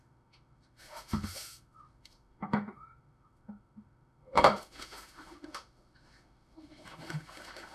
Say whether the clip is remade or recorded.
remade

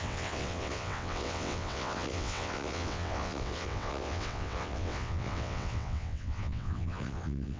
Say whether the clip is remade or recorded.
remade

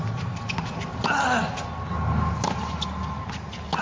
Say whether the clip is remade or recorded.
recorded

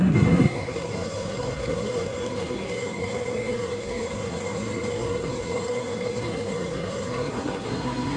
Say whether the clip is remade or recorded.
remade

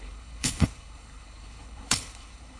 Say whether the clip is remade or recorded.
remade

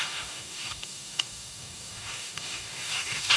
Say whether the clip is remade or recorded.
remade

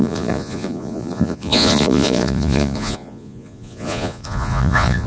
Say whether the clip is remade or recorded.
remade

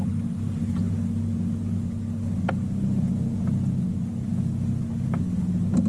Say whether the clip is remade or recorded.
recorded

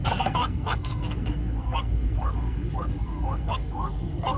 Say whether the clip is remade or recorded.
remade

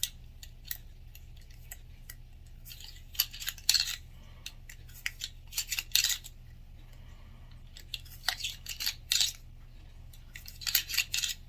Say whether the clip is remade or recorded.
recorded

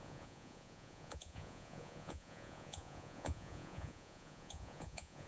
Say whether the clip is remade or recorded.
remade